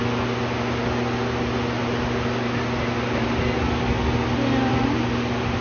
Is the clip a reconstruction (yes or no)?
no